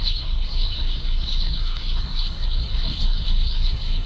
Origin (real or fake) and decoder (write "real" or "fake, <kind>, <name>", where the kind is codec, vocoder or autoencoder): fake, codec, SNAC